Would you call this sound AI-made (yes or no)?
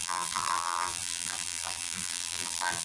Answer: yes